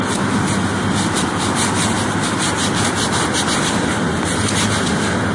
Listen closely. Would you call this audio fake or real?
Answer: real